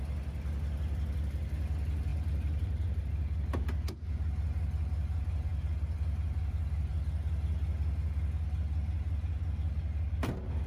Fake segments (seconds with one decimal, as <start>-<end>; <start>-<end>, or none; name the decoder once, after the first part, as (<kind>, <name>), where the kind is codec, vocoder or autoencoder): 2.1-3.1 (vocoder, BigVGAN v2)